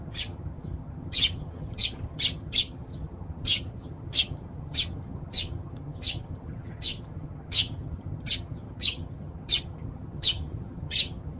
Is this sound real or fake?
fake